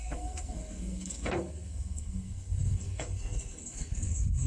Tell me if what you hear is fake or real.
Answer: fake